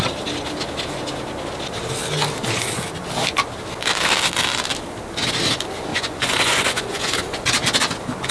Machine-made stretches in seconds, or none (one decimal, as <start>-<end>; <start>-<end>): 5.9-7.4